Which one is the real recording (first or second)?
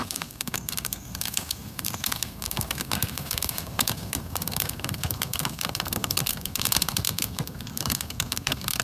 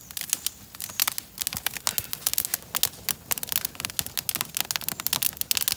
second